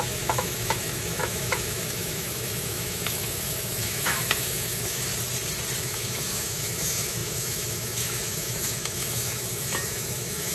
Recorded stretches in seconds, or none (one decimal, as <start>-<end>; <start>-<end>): 5.1-5.8